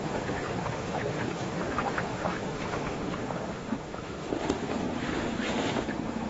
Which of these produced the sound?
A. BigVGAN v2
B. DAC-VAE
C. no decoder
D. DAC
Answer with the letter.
B